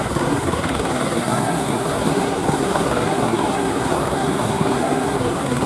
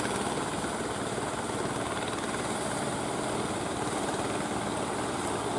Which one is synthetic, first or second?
first